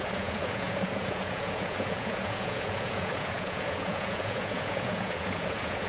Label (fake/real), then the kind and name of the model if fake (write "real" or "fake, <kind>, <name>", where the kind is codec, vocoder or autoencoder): fake, vocoder, Vocos